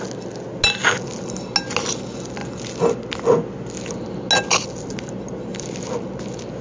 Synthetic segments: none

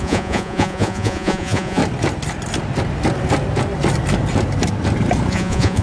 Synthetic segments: 0.0-1.8 (vocoder, Vocos); 5.3-5.8

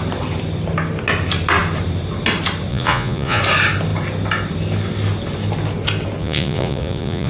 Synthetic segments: 2.7-3.4 (vocoder, Vocos); 6.2-7.3